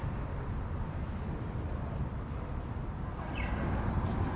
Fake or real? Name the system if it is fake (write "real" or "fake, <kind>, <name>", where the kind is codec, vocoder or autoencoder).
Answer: real